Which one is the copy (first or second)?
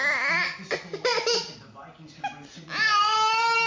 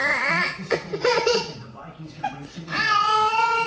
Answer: second